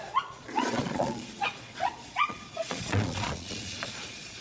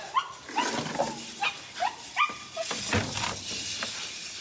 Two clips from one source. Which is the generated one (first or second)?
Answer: first